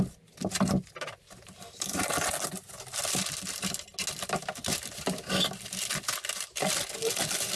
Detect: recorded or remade recorded